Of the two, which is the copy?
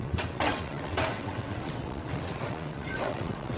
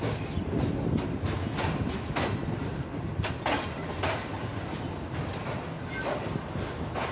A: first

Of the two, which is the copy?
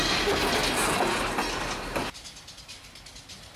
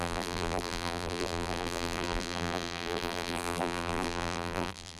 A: second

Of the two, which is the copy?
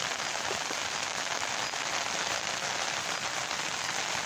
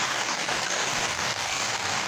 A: second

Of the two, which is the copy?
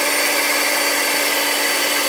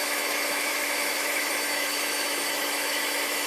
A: second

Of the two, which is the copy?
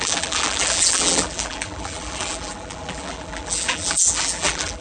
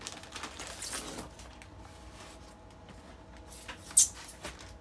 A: first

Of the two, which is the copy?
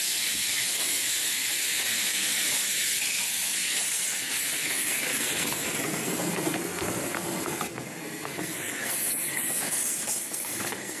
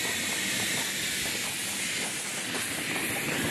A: first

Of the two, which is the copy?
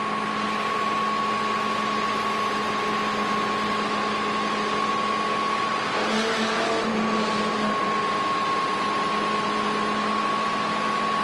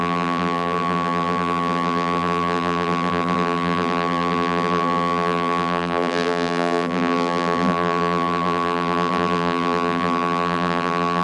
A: second